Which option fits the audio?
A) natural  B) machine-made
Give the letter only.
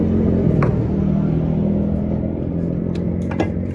A